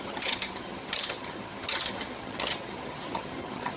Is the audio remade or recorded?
remade